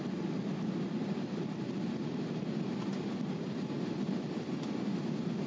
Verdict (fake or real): real